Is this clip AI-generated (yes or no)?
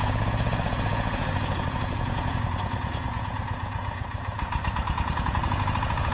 yes